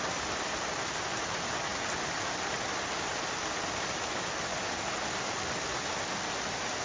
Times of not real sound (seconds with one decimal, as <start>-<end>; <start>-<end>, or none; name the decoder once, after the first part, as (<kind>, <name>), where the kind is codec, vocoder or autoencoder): none